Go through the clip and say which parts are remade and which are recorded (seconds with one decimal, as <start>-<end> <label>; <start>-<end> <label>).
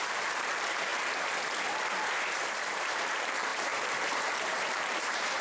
0.0-0.9 remade; 0.9-2.7 recorded; 2.7-5.4 remade